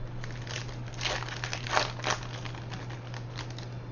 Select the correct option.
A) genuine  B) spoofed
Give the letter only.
A